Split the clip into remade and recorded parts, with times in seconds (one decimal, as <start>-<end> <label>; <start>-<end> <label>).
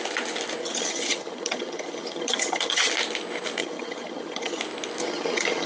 0.0-0.6 recorded; 0.6-2.9 remade; 2.9-3.6 recorded; 3.6-4.6 remade; 4.6-5.0 recorded; 5.0-5.7 remade